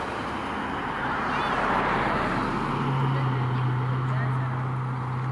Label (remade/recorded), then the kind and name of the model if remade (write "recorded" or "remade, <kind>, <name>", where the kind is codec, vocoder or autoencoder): recorded